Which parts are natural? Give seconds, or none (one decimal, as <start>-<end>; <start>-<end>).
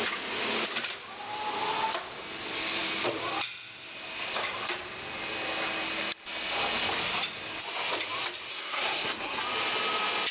0.0-8.5; 9.4-10.3